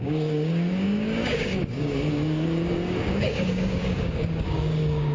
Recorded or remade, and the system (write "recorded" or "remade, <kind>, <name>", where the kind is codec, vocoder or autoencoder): remade, codec, DAC